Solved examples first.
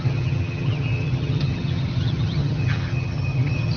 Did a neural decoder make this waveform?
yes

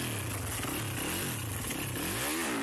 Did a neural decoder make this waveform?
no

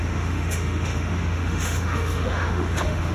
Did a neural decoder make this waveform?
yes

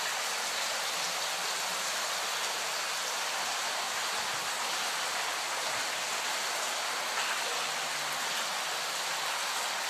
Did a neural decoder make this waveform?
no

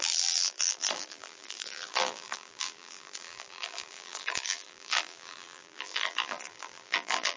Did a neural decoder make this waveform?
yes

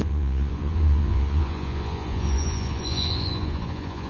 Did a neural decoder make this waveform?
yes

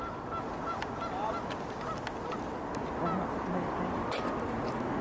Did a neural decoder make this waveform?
no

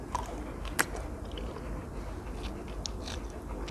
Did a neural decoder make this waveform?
no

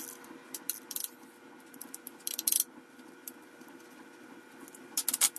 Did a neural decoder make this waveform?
no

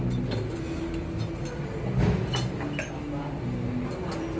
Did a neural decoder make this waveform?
no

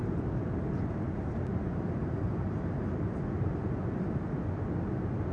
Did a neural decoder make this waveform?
no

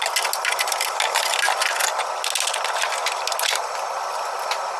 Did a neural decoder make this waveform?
no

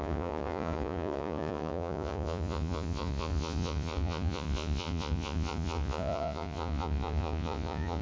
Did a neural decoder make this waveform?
yes